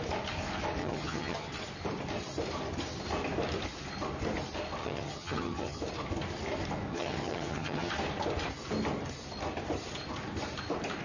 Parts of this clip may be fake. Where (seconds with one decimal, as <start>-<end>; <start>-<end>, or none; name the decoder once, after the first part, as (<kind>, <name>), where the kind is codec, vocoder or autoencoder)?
0.8-1.5 (vocoder, HiFi-GAN); 4.8-5.8; 6.9-7.9